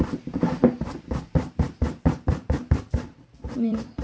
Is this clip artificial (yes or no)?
yes